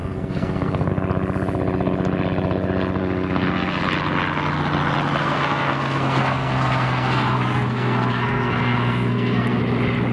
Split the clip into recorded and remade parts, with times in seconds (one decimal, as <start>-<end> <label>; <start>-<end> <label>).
0.0-0.9 remade; 0.9-3.0 recorded; 3.0-3.8 remade; 3.8-5.2 recorded; 5.2-9.6 remade; 9.6-10.1 recorded